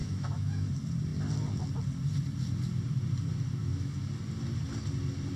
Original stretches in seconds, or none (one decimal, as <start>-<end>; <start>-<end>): 0.7-3.6; 4.1-5.4